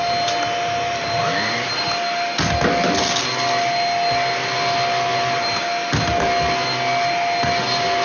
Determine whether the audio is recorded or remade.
recorded